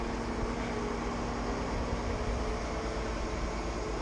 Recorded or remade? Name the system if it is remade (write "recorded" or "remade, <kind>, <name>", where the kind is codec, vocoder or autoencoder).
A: recorded